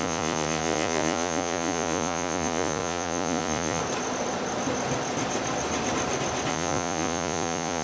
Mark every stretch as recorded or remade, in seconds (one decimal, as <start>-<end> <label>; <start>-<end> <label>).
0.0-3.8 remade; 3.8-6.5 recorded; 6.5-7.8 remade